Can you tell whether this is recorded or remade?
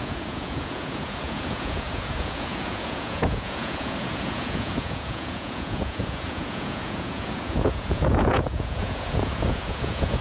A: remade